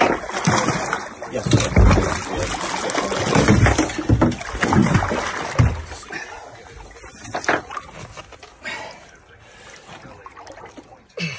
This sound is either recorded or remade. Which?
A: recorded